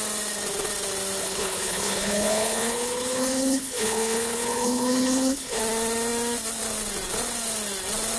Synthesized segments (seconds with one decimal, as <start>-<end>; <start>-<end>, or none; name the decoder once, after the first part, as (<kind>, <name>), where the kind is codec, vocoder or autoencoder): 1.2-5.6 (codec, HILCodec)